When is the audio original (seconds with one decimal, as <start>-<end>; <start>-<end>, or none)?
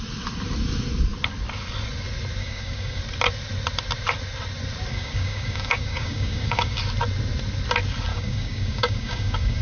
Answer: 0.0-2.4; 3.0-4.9; 6.8-8.1